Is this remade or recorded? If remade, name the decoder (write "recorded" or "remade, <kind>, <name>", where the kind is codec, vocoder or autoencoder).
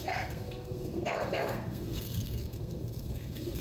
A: remade, codec, SNAC